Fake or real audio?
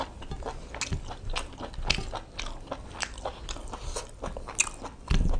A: real